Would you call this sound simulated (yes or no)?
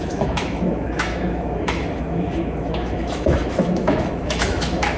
yes